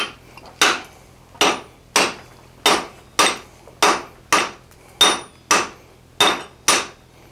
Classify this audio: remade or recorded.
recorded